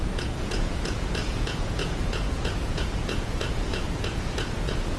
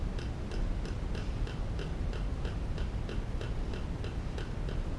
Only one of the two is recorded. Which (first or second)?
second